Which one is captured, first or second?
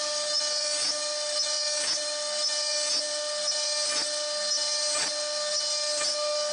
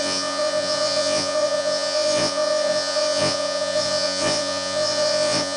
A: first